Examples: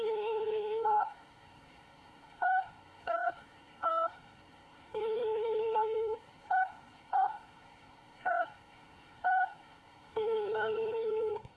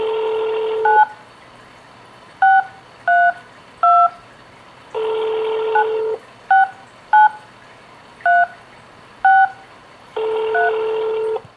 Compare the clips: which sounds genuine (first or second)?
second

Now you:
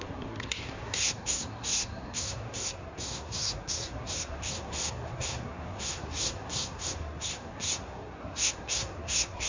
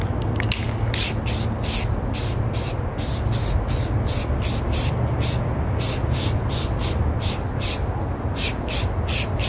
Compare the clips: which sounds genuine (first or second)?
second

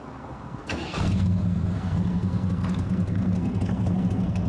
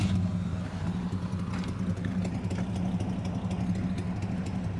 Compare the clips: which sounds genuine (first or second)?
second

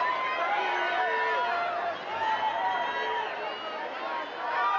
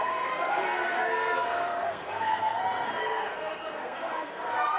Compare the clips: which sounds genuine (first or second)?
first